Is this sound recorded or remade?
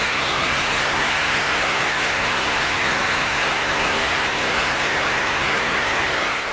remade